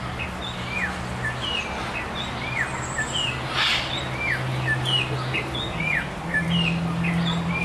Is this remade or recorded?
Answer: recorded